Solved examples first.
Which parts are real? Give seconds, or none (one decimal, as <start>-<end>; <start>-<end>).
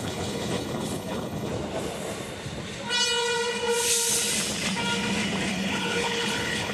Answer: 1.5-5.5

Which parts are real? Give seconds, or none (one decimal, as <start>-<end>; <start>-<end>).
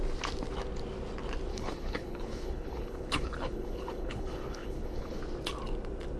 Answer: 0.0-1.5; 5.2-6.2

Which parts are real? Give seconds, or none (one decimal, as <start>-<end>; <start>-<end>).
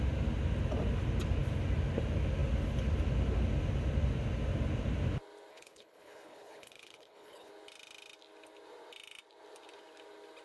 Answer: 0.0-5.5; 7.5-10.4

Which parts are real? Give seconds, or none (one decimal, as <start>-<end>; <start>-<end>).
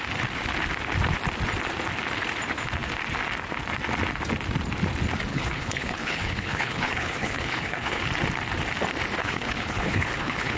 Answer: 0.0-5.3; 8.0-9.2